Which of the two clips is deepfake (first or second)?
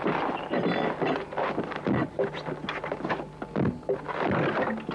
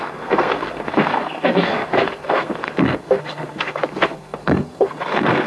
second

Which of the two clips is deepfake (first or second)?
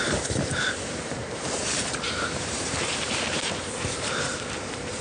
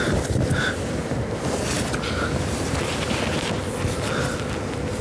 first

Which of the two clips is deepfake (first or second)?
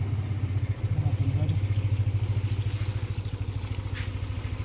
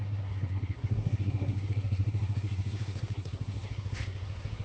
second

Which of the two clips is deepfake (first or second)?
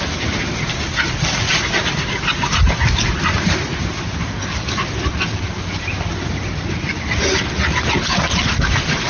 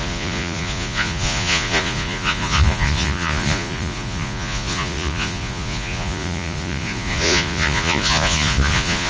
second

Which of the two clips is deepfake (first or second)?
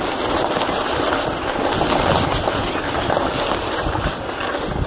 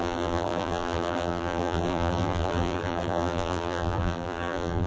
second